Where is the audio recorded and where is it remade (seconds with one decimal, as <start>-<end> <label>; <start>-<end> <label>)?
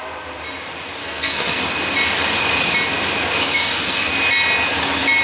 0.0-1.0 recorded; 1.0-1.6 remade; 1.6-3.5 recorded; 3.5-4.1 remade; 4.1-5.2 recorded